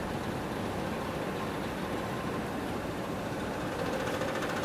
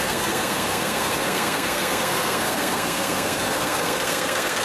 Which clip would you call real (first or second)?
first